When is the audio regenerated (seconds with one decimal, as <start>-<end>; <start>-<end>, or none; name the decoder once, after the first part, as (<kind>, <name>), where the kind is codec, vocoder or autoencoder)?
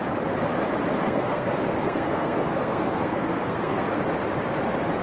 1.0-4.0 (codec, SNAC)